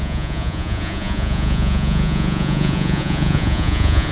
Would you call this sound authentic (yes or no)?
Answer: no